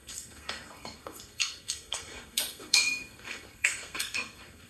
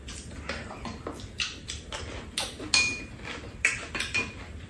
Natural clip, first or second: second